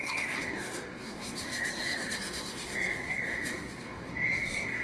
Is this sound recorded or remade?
remade